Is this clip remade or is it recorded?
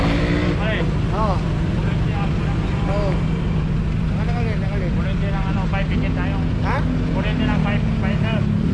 recorded